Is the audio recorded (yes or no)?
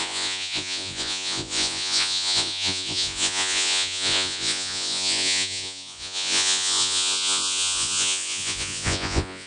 no